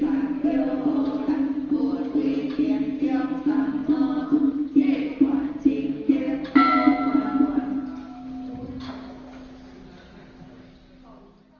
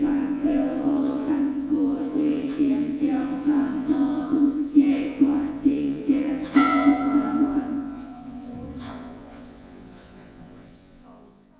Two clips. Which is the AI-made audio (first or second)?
second